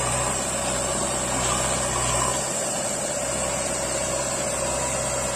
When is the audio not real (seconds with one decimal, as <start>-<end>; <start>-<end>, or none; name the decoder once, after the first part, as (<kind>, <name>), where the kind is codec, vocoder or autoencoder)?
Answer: none